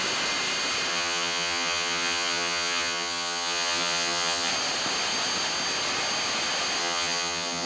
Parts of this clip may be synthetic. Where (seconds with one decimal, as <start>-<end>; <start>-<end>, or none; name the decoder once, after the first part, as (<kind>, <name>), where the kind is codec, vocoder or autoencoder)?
0.9-4.5 (vocoder, HiFi-GAN); 6.8-7.7